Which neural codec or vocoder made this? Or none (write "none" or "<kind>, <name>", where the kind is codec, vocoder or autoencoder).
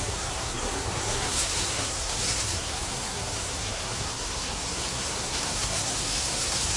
codec, SNAC